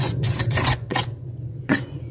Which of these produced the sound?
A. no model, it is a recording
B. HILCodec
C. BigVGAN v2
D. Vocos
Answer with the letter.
D